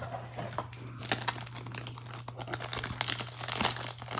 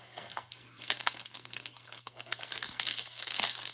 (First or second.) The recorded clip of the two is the first